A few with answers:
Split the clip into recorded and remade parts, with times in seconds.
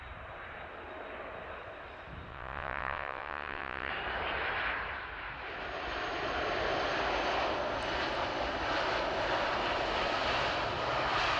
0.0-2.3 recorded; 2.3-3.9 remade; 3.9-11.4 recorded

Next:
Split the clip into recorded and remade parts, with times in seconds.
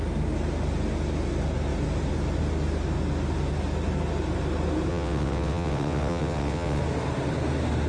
0.0-4.9 recorded; 4.9-6.8 remade; 6.8-7.9 recorded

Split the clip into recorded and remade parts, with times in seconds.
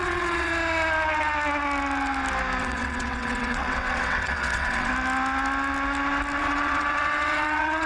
0.0-0.5 remade; 0.5-2.6 recorded; 2.6-4.9 remade; 4.9-6.4 recorded; 6.4-7.9 remade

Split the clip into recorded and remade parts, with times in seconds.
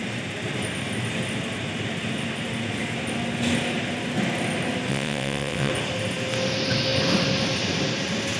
0.0-4.9 recorded; 4.9-5.7 remade; 5.7-8.4 recorded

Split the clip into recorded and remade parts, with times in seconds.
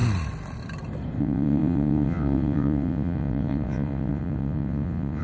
0.0-1.2 recorded; 1.2-5.2 remade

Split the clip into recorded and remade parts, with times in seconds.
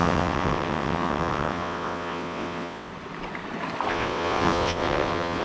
0.0-2.9 remade; 2.9-3.9 recorded; 3.9-5.4 remade